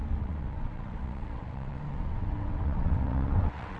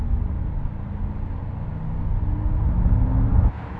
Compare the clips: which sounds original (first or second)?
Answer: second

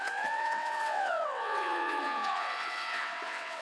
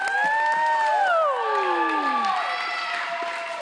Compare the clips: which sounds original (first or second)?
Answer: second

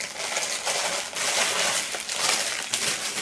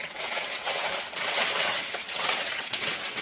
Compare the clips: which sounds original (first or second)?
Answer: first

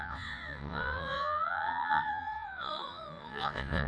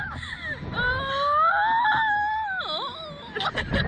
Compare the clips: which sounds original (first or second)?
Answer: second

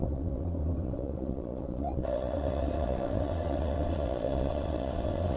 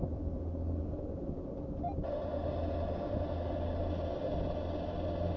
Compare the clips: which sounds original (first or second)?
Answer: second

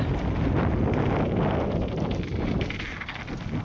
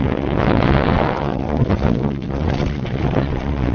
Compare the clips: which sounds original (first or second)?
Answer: first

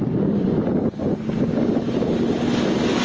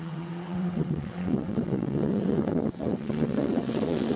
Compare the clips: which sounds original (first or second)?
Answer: first